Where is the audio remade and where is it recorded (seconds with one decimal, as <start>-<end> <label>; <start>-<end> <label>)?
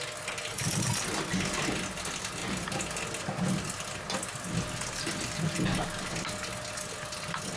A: 0.0-7.6 recorded